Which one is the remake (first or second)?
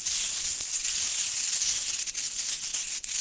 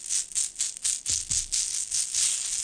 first